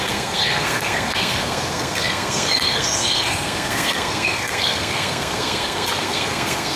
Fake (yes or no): yes